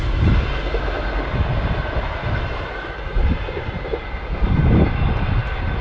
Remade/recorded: recorded